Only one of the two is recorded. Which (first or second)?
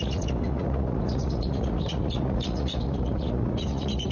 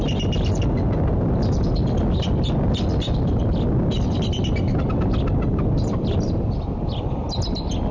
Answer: second